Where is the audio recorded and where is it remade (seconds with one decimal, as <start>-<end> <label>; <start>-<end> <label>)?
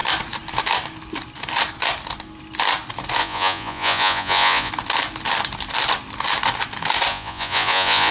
0.0-3.2 recorded; 3.2-4.7 remade; 4.7-7.1 recorded; 7.1-8.1 remade